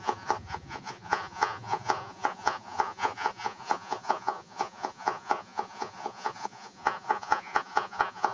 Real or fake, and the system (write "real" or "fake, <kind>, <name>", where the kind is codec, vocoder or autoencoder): fake, vocoder, Vocos